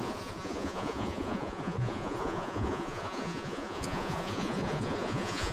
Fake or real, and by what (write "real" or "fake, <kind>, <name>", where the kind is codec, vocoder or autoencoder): fake, vocoder, Vocos